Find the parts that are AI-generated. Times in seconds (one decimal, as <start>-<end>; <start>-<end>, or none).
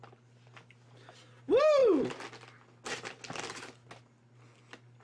none